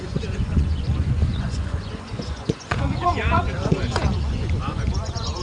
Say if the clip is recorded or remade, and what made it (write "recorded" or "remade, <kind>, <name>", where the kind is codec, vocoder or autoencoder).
remade, vocoder, Vocos